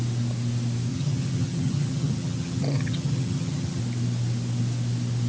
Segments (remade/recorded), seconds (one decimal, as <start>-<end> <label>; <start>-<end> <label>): 0.0-0.9 recorded; 0.9-3.8 remade; 3.8-5.3 recorded